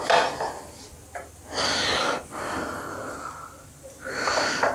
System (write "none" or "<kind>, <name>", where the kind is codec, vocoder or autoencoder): none